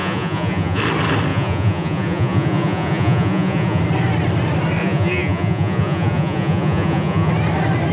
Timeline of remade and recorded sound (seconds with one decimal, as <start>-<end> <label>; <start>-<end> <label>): 0.0-0.8 remade; 0.8-1.3 recorded; 1.3-3.8 remade; 3.8-4.8 recorded; 4.8-7.3 remade; 7.3-7.9 recorded

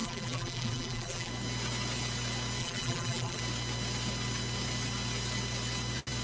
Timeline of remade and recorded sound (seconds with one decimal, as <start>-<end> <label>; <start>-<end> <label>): 0.0-1.3 remade; 1.3-2.6 recorded; 2.6-3.4 remade; 3.4-6.2 recorded

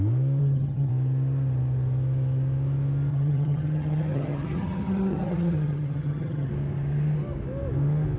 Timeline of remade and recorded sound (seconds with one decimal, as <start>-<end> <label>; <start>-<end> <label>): 0.0-0.4 recorded; 0.4-0.9 remade; 0.9-3.1 recorded; 3.1-6.5 remade; 6.5-8.2 recorded